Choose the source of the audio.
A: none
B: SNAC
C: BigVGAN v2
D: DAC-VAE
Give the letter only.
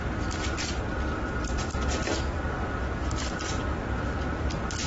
C